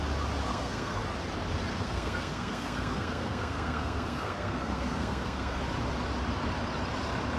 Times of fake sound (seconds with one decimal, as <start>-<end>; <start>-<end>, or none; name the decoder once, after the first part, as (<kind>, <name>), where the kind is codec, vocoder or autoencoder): 0.5-1.0 (codec, SNAC); 1.7-5.6